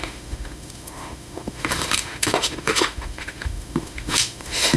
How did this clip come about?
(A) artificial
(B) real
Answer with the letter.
A